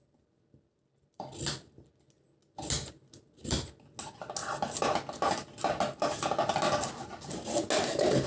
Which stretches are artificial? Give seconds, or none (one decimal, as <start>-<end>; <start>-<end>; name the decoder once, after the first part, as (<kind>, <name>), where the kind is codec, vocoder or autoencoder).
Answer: none